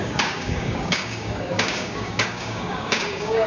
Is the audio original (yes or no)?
no